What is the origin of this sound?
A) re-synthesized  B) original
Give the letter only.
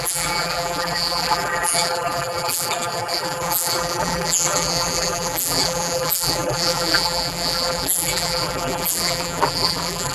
A